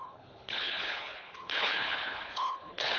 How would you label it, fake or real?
fake